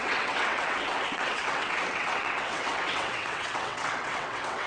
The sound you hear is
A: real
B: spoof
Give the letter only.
B